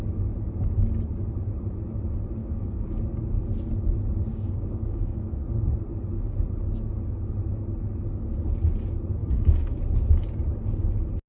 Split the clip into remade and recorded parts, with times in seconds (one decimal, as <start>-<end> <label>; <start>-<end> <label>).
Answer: 0.0-2.4 recorded; 2.4-3.0 remade; 3.0-4.3 recorded; 4.3-5.4 remade; 5.4-9.2 recorded; 9.2-9.8 remade; 9.8-11.3 recorded